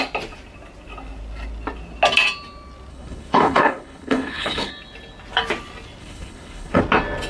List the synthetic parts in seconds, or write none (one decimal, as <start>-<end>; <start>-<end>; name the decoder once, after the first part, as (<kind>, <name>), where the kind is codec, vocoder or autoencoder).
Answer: 2.9-4.7 (codec, HILCodec); 6.0-6.8